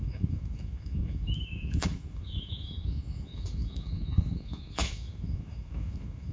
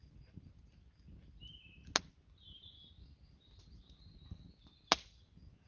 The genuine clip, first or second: second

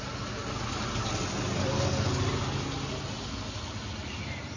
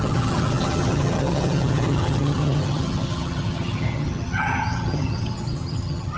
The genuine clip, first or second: first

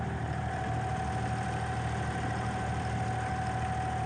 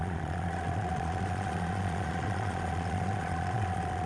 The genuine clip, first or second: first